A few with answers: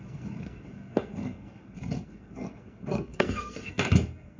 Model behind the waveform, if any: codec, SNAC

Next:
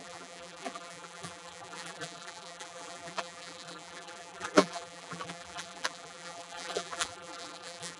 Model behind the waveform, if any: vocoder, BigVGAN v2